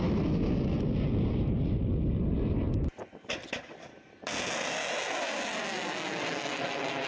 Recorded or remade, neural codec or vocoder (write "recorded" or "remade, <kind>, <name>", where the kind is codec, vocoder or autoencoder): recorded